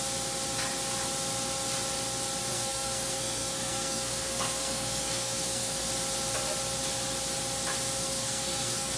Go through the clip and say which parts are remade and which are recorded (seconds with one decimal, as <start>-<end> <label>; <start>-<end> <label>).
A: 0.0-2.5 recorded; 2.5-5.9 remade; 5.9-8.0 recorded; 8.0-9.0 remade